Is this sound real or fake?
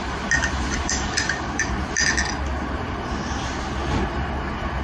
real